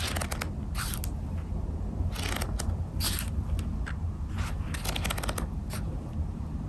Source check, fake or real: real